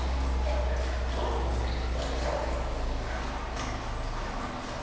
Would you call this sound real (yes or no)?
yes